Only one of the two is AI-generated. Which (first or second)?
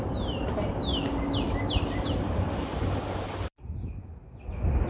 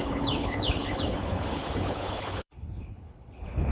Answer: second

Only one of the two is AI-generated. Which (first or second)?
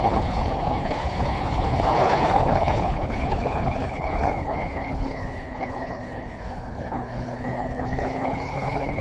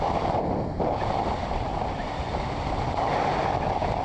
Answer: first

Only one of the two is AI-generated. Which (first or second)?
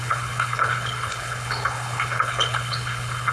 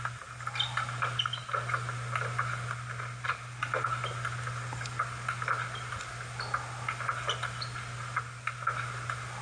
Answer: first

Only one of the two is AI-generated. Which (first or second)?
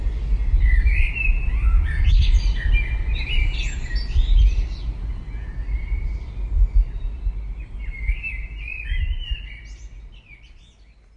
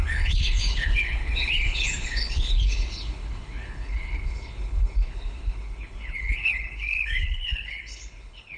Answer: second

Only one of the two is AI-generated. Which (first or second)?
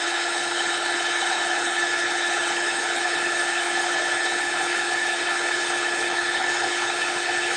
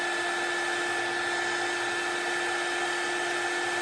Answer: first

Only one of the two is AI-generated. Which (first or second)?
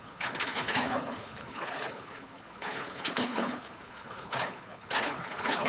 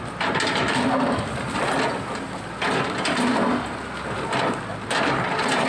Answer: first